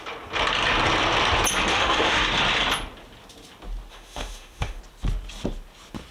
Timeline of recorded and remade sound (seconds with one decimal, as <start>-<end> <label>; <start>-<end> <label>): 0.0-1.7 recorded; 1.7-2.2 remade; 2.2-3.9 recorded; 3.9-4.8 remade; 4.8-6.1 recorded